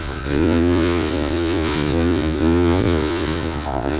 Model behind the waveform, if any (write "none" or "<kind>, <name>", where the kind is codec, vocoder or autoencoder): vocoder, Vocos